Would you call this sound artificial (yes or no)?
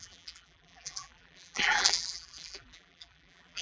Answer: yes